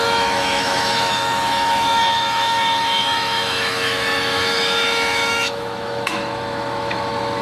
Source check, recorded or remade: remade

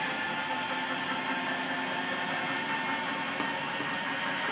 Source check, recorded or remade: recorded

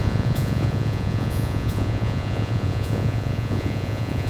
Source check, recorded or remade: remade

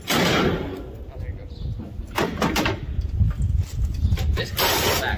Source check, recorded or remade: remade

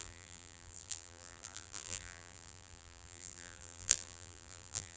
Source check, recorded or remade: remade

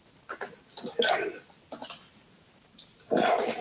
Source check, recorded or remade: recorded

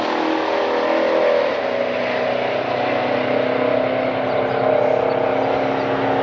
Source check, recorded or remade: recorded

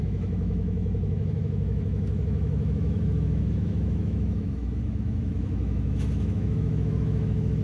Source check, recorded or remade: remade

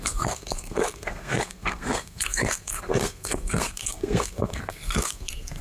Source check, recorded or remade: remade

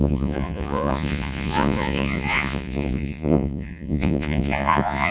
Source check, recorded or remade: remade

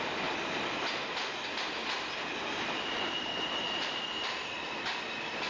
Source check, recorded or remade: recorded